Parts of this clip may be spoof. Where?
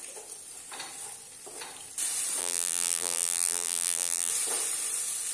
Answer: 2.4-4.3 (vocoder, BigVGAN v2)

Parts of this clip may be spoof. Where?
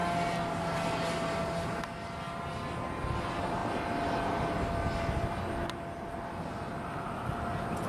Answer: none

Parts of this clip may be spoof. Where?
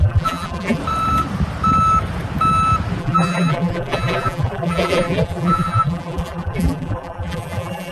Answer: 0.0-0.8 (vocoder, BigVGAN v2); 3.0-7.9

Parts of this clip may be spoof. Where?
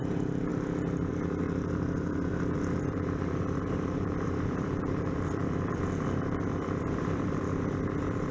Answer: 0.0-0.5 (vocoder, BigVGAN v2); 1.1-8.3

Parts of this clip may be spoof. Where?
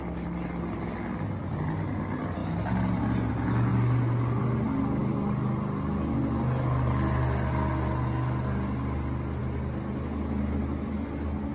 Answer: none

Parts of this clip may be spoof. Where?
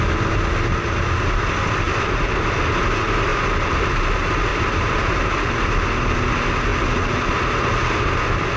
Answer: 3.3-4.1 (vocoder, BigVGAN v2); 4.5-5.2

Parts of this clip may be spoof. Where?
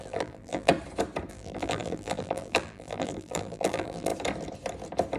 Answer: 0.0-0.7 (vocoder, BigVGAN v2); 1.3-4.1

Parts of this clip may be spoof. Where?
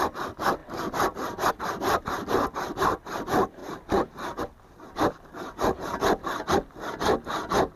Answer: none